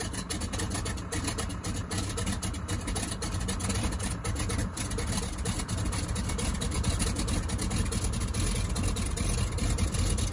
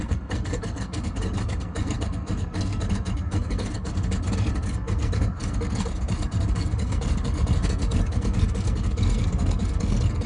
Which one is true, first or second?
first